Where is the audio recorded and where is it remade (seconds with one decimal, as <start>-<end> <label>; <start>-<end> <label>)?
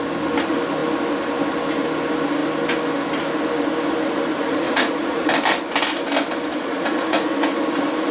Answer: 0.0-4.3 recorded; 4.3-5.3 remade; 5.3-6.5 recorded; 6.5-7.3 remade; 7.3-8.1 recorded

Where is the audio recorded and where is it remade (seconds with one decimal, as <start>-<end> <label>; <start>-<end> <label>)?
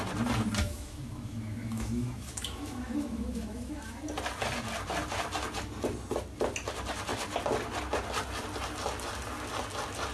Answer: 0.0-0.6 recorded; 0.6-4.0 remade; 4.0-10.1 recorded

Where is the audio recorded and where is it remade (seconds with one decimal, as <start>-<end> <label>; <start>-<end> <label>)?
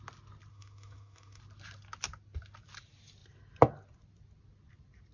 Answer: 0.0-0.5 recorded; 0.5-1.4 remade; 1.4-5.1 recorded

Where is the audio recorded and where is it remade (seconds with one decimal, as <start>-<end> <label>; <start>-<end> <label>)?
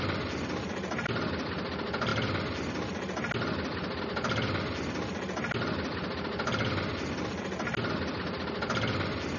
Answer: 0.0-9.4 recorded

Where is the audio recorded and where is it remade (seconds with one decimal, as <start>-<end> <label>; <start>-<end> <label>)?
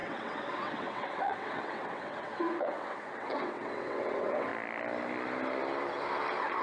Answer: 0.0-4.5 remade; 4.5-6.6 recorded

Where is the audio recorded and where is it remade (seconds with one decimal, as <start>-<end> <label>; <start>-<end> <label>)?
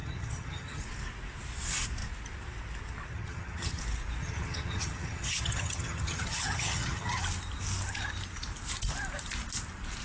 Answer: 0.0-0.8 remade; 0.8-3.1 recorded; 3.1-3.8 remade; 3.8-4.2 recorded; 4.2-7.2 remade; 7.2-10.0 recorded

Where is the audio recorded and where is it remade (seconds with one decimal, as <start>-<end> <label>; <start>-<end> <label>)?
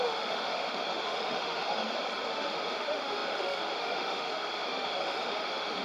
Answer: 0.0-1.8 remade; 1.8-2.3 recorded; 2.3-5.8 remade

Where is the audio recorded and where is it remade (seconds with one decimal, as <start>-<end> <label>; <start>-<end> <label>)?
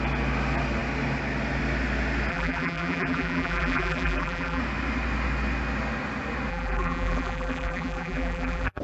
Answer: 0.0-2.3 recorded; 2.3-4.6 remade; 4.6-6.5 recorded; 6.5-8.8 remade